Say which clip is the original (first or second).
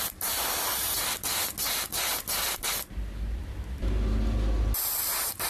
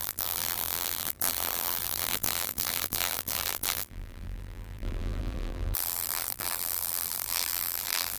first